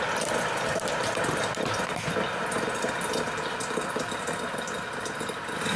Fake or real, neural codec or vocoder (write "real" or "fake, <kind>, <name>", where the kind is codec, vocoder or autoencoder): real